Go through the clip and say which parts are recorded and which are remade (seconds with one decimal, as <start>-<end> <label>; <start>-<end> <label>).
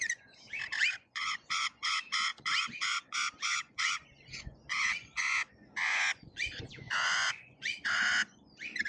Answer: 0.0-8.9 remade